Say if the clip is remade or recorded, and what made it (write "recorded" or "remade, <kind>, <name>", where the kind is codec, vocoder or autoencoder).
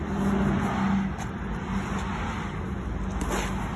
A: recorded